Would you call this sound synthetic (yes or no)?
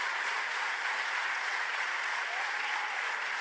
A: yes